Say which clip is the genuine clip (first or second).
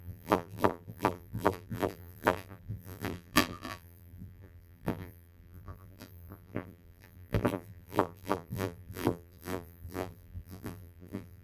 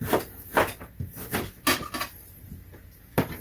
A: second